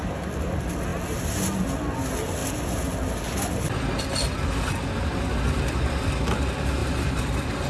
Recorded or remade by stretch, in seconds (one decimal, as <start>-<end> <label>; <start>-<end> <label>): 0.0-6.8 recorded; 6.8-7.7 remade